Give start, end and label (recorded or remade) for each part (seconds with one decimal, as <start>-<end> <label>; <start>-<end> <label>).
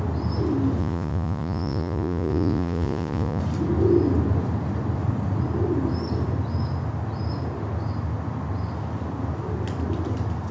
0.0-0.8 recorded; 0.8-3.4 remade; 3.4-10.5 recorded